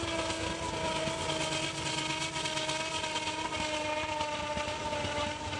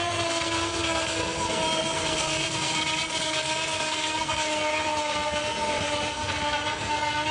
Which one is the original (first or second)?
first